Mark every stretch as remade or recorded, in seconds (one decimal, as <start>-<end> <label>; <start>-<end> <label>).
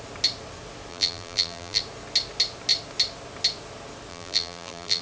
0.0-0.9 recorded; 0.9-1.8 remade; 1.8-4.1 recorded; 4.1-5.0 remade